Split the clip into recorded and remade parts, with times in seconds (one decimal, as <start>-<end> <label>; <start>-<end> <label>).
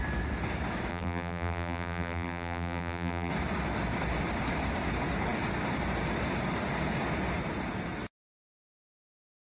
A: 0.0-0.9 recorded; 0.9-3.3 remade; 3.3-9.6 recorded